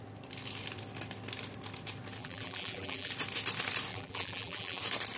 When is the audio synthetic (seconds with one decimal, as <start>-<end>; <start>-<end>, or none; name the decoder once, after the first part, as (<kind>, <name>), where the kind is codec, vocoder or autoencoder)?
2.2-3.1 (vocoder, BigVGAN v2); 3.9-4.8